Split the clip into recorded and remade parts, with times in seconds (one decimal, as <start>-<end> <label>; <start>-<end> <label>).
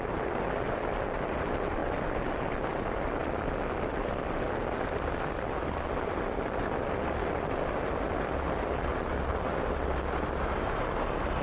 0.0-11.4 recorded